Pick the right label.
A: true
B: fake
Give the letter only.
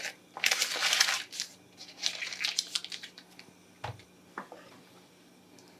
A